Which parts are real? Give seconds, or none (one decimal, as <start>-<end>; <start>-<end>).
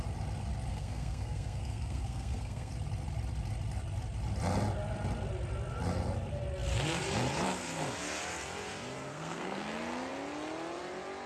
0.0-0.7; 2.7-9.1; 9.6-11.3